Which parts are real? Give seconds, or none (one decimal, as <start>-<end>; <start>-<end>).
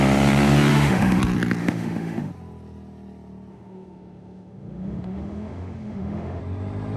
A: 0.0-0.7; 1.2-1.6; 2.3-3.5; 6.4-7.0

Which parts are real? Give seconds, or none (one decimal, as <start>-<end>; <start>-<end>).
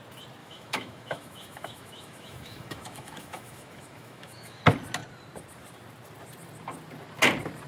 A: 0.0-0.4; 4.6-7.7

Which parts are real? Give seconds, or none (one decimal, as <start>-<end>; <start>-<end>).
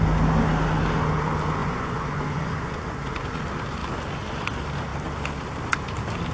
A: 0.0-1.6; 3.4-6.3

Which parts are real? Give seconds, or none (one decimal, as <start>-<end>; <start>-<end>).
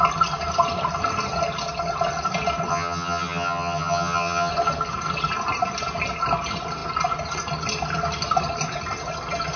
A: 0.0-2.7; 4.5-9.6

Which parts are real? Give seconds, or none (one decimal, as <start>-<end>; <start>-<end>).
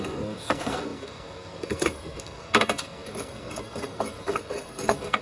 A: none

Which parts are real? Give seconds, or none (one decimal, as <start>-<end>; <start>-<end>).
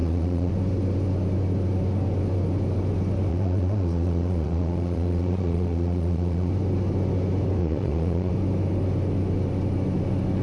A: 0.5-3.3; 6.5-7.6; 8.3-10.4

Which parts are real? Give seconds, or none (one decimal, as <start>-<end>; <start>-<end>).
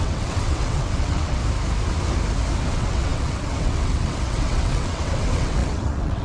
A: 1.4-2.7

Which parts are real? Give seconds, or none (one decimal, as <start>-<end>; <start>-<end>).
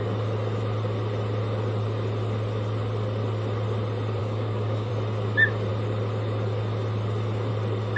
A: 0.0-4.2; 4.9-8.0